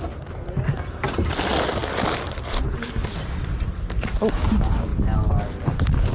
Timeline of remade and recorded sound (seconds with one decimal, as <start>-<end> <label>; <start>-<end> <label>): 0.0-6.1 recorded